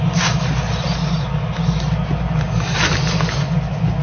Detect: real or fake real